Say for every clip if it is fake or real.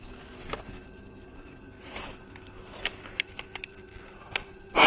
real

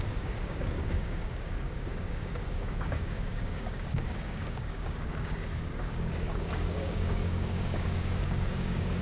fake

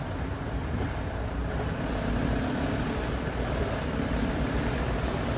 fake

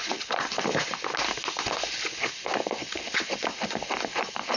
real